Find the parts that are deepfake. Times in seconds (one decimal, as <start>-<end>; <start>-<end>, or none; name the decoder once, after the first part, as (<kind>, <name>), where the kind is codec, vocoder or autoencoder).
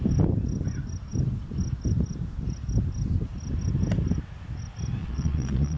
5.0-5.8 (vocoder, Vocos)